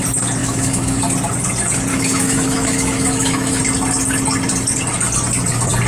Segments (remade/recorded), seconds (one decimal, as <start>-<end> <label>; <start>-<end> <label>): 0.0-0.4 recorded; 0.4-1.0 remade; 1.0-1.9 recorded; 1.9-3.6 remade; 3.6-5.9 recorded